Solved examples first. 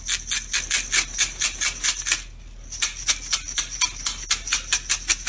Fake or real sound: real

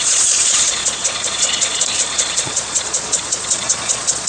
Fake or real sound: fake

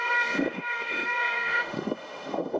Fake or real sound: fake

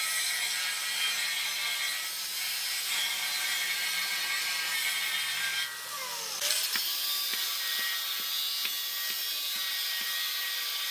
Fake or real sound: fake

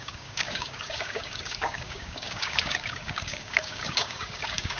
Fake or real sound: fake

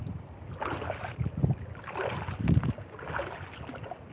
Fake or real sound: real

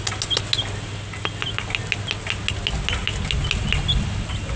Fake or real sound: real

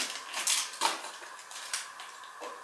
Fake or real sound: real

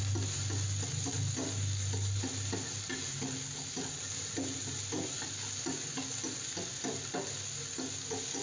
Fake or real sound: real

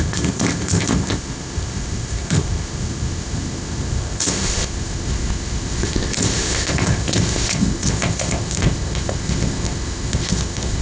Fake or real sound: fake